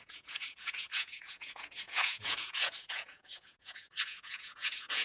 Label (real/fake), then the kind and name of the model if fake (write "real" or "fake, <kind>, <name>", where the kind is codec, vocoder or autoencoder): fake, vocoder, Vocos